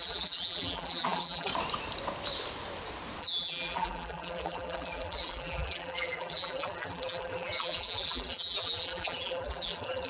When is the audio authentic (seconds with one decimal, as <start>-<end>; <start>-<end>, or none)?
1.5-3.2